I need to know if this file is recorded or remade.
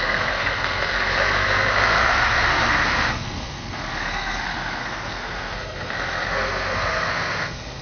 remade